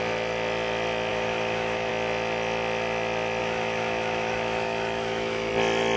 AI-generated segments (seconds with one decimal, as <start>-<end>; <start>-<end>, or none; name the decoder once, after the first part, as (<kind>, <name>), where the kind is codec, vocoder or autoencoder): 1.1-1.9 (autoencoder, DAC-VAE); 3.4-5.5